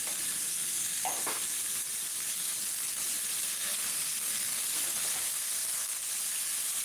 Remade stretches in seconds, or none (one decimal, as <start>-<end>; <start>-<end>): 0.5-1.4; 2.3-3.0; 3.4-6.1